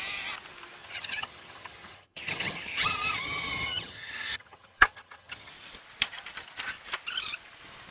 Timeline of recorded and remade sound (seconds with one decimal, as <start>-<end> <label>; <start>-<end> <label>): 0.0-0.8 recorded; 0.8-5.5 remade; 5.5-7.9 recorded